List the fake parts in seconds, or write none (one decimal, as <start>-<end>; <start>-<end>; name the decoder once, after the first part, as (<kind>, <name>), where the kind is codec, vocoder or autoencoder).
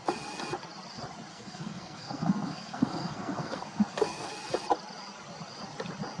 1.3-4.3 (codec, SNAC)